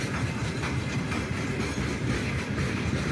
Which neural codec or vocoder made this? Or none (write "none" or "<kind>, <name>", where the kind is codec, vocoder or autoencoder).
none